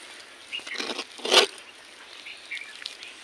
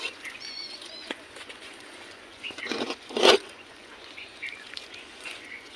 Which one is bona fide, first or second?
first